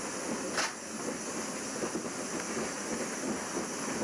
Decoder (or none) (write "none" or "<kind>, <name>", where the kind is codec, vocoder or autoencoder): none